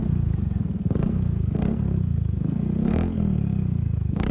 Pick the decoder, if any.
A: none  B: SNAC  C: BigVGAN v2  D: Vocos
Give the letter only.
B